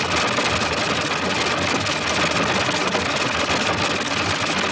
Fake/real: real